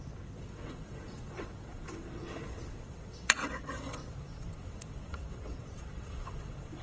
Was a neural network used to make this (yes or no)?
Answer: yes